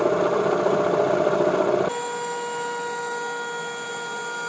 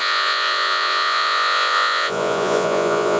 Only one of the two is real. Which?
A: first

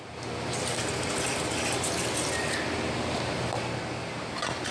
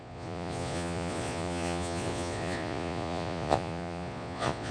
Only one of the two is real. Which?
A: first